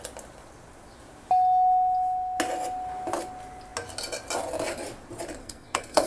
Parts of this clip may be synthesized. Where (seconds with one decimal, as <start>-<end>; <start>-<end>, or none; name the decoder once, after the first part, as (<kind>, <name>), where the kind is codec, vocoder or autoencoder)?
5.4-6.1 (codec, SNAC)